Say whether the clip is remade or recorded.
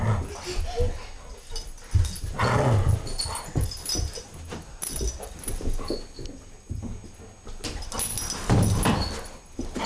recorded